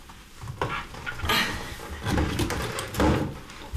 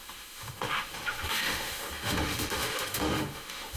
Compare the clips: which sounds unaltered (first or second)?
first